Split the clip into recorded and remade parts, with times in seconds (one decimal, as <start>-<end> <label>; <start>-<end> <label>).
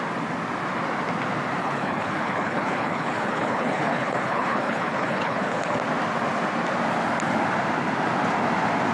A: 0.0-1.6 recorded; 1.6-5.8 remade; 5.8-8.9 recorded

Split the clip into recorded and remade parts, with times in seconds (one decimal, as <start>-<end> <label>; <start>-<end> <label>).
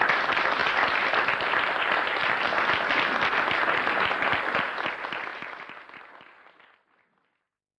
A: 0.0-7.8 recorded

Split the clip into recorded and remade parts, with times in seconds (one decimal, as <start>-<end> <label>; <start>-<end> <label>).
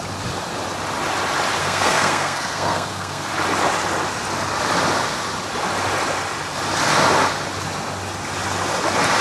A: 0.0-1.6 recorded; 1.6-3.3 remade; 3.3-9.2 recorded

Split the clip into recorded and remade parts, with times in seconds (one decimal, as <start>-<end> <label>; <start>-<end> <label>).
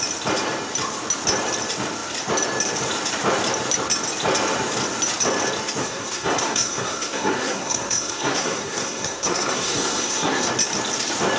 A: 0.0-5.8 recorded; 5.8-10.5 remade; 10.5-11.4 recorded